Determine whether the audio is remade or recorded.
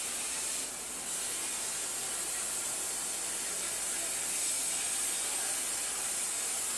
recorded